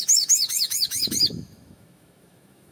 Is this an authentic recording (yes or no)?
no